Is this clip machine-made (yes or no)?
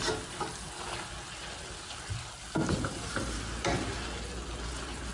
no